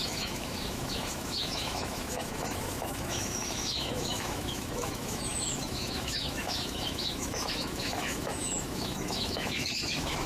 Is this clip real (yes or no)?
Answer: no